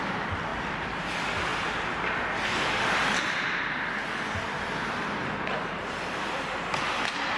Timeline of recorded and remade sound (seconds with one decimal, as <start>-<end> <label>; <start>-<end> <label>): 0.0-0.5 recorded; 0.5-1.1 remade; 1.1-7.4 recorded